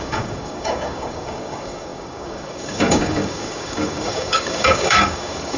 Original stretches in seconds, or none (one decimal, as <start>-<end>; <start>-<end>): none